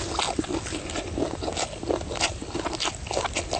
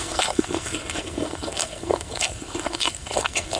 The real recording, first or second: first